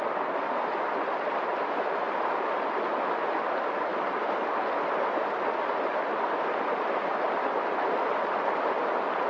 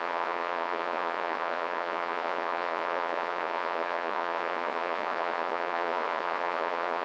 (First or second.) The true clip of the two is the first